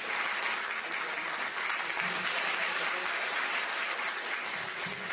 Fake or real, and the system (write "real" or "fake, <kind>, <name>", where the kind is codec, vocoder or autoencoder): real